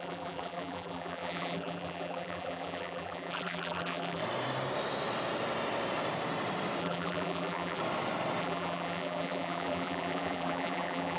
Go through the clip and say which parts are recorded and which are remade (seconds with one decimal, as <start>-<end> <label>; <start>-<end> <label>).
0.0-4.2 remade; 4.2-6.8 recorded; 6.8-7.8 remade; 7.8-8.4 recorded; 8.4-11.2 remade